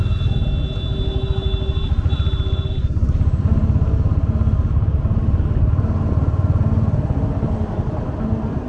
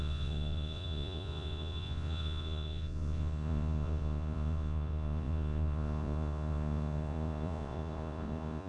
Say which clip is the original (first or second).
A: first